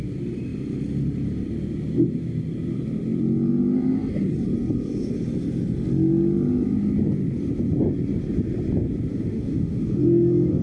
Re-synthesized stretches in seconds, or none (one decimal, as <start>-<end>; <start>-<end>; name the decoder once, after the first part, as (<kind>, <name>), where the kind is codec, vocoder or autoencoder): 9.1-10.6 (autoencoder, DAC-VAE)